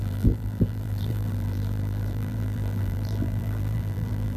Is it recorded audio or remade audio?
remade